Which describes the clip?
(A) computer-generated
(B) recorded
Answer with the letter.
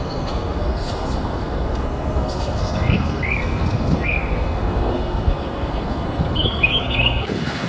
A